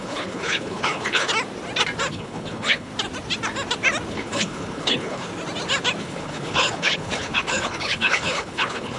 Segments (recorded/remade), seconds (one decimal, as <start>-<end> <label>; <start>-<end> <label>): 0.0-1.3 remade; 1.3-2.1 recorded; 2.1-2.9 remade; 2.9-4.1 recorded; 4.1-5.3 remade; 5.3-6.0 recorded; 6.0-9.0 remade